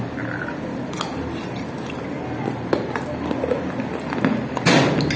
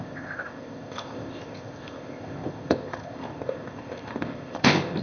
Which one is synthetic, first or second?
second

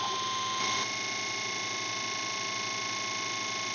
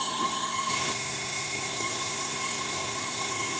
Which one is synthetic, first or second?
second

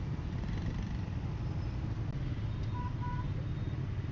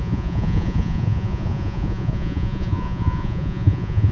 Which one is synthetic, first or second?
second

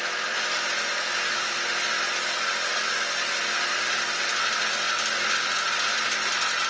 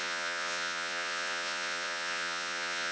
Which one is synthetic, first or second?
second